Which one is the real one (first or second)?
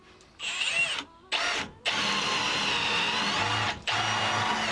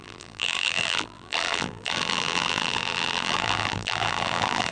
first